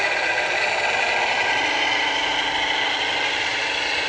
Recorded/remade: recorded